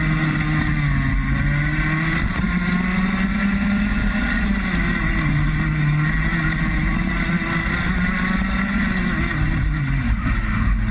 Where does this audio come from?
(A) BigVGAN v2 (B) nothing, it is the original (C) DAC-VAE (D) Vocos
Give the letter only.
B